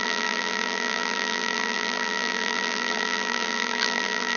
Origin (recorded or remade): remade